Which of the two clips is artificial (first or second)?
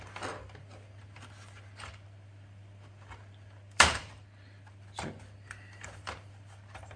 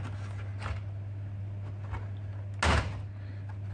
first